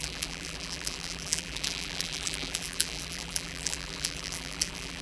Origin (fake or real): fake